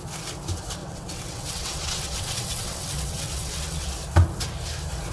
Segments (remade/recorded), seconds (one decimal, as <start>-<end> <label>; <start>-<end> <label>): 0.0-0.8 recorded; 0.8-3.9 remade; 3.9-5.1 recorded